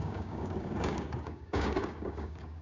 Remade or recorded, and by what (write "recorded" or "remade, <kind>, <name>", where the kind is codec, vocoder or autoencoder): remade, codec, DAC